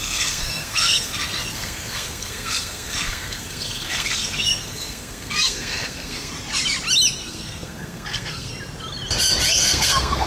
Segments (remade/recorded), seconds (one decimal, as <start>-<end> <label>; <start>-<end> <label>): 0.0-6.3 remade; 6.3-7.2 recorded; 7.2-8.5 remade; 8.5-9.5 recorded; 9.5-10.3 remade